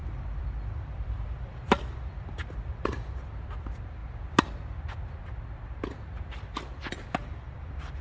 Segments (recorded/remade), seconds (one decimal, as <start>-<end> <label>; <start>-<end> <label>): 0.0-3.3 remade; 3.3-7.2 recorded; 7.2-8.0 remade

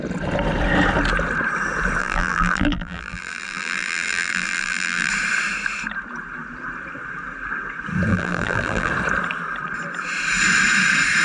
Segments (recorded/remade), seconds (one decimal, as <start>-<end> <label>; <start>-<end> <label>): 0.0-2.0 recorded; 2.0-5.1 remade; 5.1-8.1 recorded; 8.1-8.9 remade; 8.9-11.2 recorded

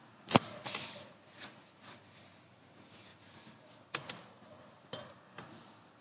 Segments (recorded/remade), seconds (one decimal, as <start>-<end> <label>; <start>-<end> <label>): 0.0-6.0 recorded